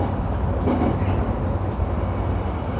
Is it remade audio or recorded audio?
recorded